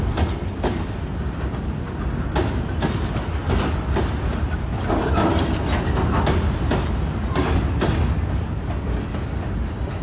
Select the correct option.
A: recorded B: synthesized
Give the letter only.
A